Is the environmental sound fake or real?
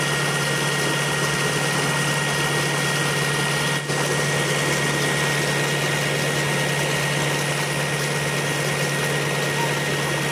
real